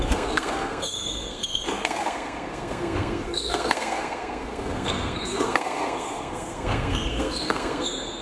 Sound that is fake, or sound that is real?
fake